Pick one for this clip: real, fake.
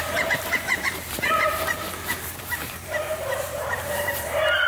fake